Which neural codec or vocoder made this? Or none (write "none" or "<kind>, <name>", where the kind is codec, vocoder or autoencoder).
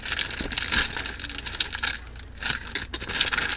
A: none